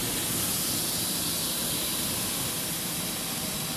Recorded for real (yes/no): yes